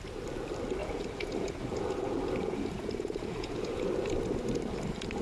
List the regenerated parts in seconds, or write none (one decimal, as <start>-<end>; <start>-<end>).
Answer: 0.8-3.9